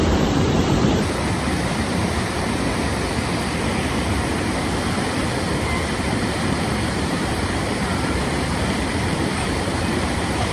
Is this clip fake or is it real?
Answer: fake